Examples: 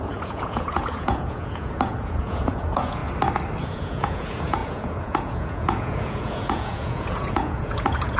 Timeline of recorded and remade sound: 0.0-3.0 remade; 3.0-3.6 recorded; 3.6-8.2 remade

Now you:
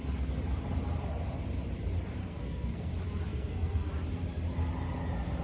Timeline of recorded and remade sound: 0.0-2.2 recorded; 2.2-2.9 remade; 2.9-3.3 recorded; 3.3-3.9 remade; 3.9-5.4 recorded

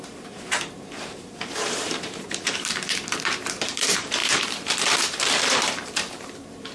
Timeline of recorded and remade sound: 0.0-6.7 remade

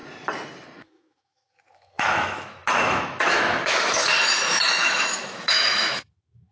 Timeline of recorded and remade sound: 0.0-0.8 recorded; 0.8-6.5 remade

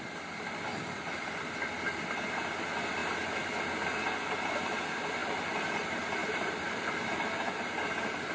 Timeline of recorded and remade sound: 0.0-8.3 recorded

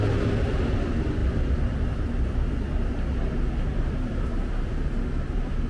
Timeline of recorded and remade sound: 0.0-5.7 recorded